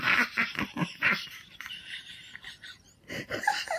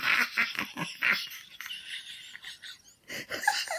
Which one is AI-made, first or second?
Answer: first